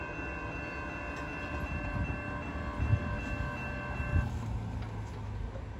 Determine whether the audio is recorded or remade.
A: recorded